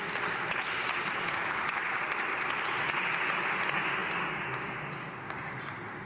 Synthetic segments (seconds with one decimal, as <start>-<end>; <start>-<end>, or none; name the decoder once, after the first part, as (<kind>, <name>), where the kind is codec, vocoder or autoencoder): 4.0-5.5 (codec, DAC)